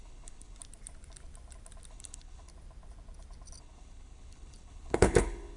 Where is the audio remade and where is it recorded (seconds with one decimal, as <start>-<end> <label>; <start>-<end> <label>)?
0.0-0.6 remade; 0.6-1.9 recorded; 1.9-2.5 remade; 2.5-3.6 recorded; 3.6-5.6 remade